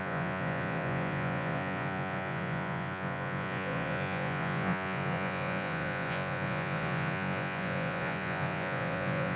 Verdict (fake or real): fake